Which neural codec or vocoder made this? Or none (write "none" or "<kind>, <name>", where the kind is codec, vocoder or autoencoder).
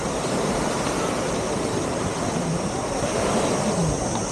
vocoder, BigVGAN v2